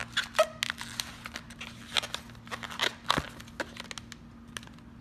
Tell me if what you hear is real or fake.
real